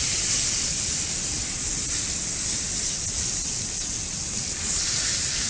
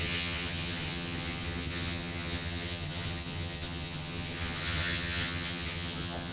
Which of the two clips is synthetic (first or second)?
second